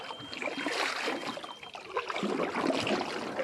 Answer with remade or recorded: recorded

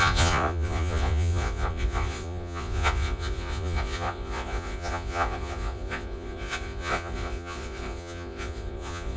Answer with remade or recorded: remade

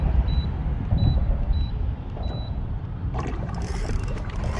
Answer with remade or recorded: remade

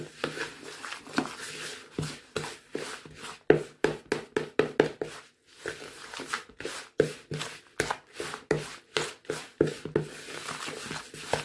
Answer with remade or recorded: recorded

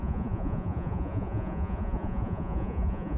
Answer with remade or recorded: remade